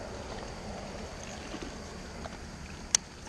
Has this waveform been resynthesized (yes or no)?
no